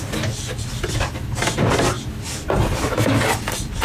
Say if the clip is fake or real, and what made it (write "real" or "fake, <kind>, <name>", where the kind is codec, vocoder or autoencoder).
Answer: real